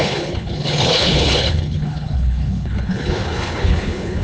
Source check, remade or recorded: remade